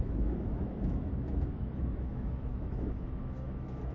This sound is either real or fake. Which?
fake